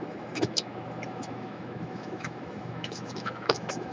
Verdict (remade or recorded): remade